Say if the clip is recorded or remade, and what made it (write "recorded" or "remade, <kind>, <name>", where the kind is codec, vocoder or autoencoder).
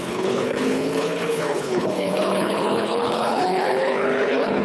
remade, codec, HILCodec